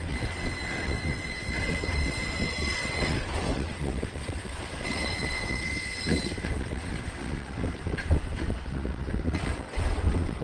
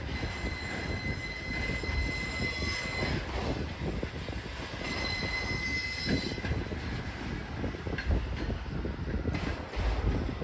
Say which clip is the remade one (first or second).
first